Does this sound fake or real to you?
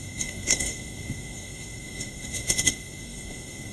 fake